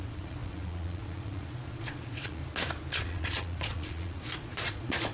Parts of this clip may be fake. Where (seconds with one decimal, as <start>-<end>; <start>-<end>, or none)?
0.0-2.4; 3.0-5.1